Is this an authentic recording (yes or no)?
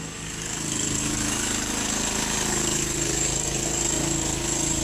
no